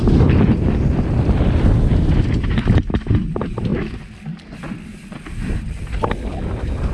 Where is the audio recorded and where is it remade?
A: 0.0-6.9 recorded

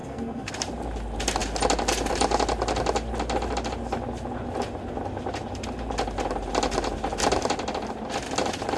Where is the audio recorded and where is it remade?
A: 0.0-0.5 remade; 0.5-8.8 recorded

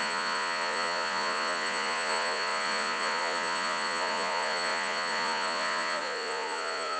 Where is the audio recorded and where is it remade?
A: 0.0-7.0 remade

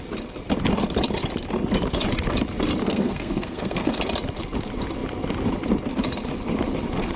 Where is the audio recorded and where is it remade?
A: 0.0-2.8 recorded; 2.8-4.0 remade; 4.0-7.2 recorded